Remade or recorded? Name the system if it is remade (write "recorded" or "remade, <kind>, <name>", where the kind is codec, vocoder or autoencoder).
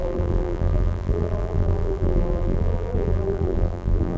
remade, vocoder, BigVGAN v2